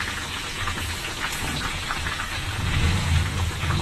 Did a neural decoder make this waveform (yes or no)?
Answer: yes